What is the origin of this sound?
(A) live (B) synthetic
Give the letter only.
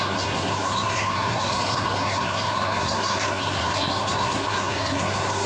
B